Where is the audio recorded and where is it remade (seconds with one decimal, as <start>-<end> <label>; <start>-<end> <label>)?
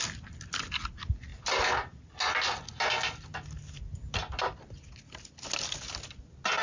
0.0-6.6 recorded